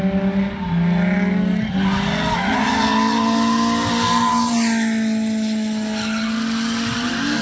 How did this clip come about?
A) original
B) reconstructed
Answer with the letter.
A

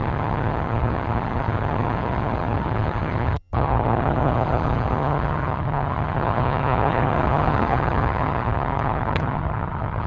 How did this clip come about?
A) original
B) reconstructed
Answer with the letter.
B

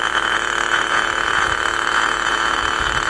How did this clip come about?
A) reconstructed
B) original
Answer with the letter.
A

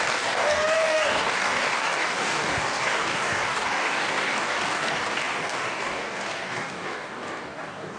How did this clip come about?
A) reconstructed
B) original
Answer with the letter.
A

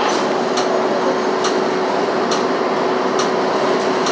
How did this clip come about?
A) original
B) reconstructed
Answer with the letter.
A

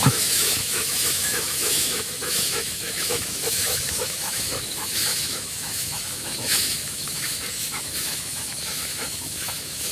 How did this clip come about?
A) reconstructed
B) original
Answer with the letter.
A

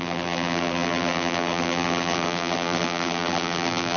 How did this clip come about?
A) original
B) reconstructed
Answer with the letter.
B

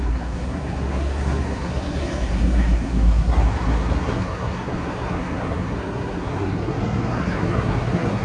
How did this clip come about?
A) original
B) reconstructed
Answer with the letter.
B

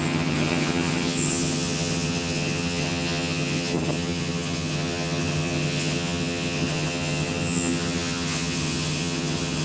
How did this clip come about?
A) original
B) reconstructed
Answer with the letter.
B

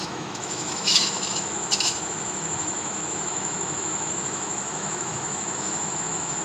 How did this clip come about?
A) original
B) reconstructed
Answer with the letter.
B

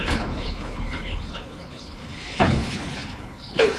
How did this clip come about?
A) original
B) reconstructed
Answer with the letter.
B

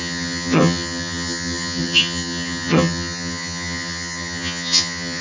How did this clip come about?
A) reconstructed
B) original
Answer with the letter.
A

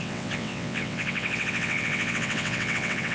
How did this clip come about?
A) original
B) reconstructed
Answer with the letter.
B